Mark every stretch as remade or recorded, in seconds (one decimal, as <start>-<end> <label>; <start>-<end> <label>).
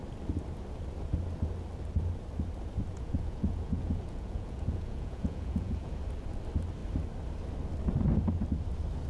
0.0-2.9 recorded; 2.9-6.0 remade; 6.0-9.1 recorded